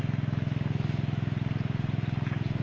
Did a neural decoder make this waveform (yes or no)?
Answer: no